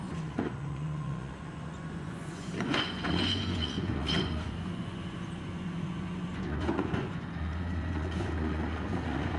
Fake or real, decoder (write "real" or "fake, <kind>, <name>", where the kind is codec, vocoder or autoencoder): fake, vocoder, Vocos